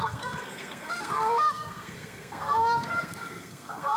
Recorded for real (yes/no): no